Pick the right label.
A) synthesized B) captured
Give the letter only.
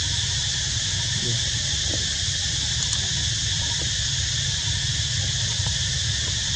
B